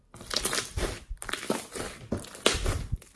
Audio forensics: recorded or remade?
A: recorded